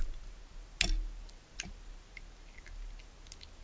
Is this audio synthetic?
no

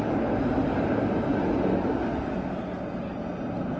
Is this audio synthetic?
no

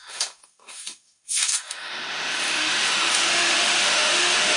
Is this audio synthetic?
yes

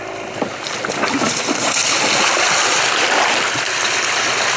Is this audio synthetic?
no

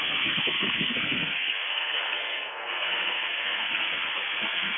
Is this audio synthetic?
yes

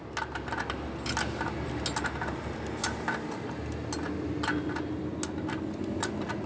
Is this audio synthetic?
no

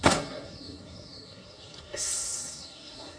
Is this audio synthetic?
yes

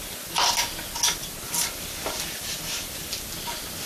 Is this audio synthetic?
no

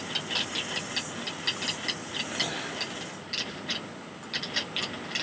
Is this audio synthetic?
no